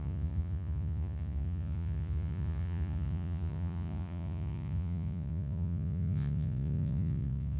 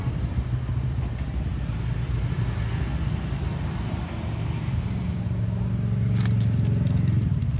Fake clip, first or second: first